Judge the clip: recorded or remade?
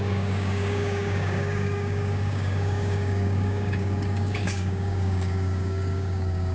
remade